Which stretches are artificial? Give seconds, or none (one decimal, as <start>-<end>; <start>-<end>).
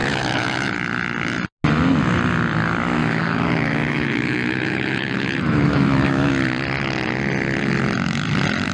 0.0-0.7; 3.0-6.3